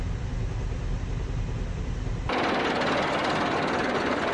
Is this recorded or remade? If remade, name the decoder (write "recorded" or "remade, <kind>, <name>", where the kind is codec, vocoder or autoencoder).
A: recorded